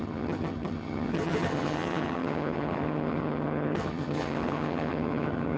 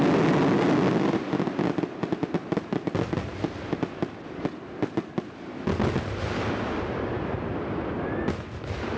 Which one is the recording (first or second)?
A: second